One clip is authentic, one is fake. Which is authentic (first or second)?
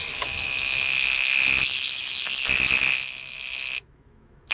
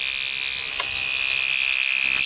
second